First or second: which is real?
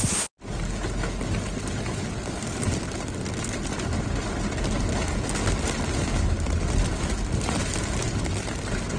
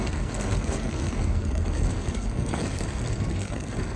first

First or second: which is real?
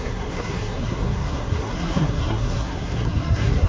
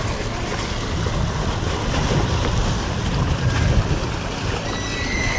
second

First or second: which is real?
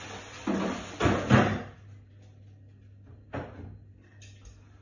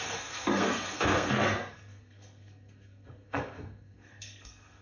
first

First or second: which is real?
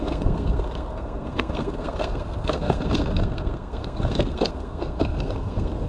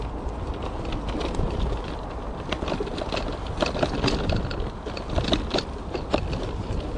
second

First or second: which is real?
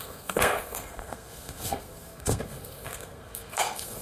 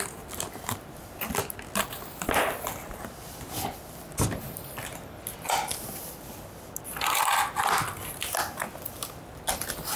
second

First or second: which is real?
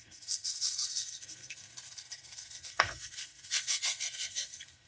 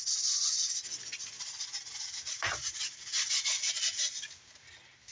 second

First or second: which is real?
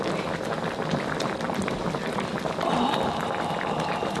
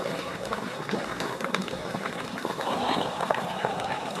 first